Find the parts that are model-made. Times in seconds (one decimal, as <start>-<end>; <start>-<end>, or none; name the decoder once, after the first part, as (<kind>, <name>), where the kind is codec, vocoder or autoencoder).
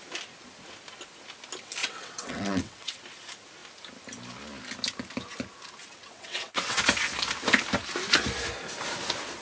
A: 1.8-3.0 (vocoder, WaveNeXt); 5.8-6.8